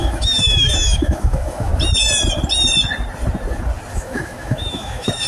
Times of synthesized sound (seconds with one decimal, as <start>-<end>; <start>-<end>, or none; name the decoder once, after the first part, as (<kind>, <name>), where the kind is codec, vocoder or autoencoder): 0.0-1.7 (autoencoder, DAC-VAE); 3.9-5.3